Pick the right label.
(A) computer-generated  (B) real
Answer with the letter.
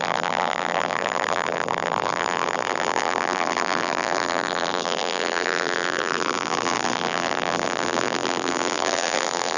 A